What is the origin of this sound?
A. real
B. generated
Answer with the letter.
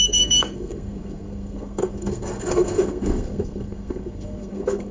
B